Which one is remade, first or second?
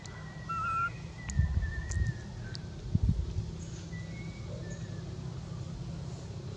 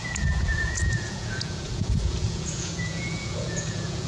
second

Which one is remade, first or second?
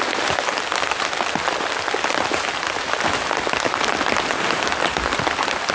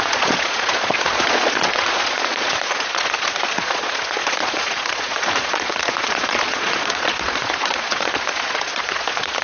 second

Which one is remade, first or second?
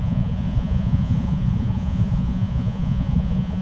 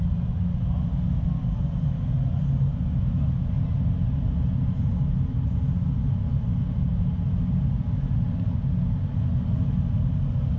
first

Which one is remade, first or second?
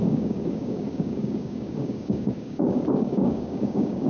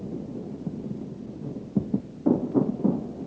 first